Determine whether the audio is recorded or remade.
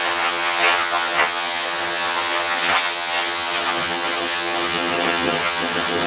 remade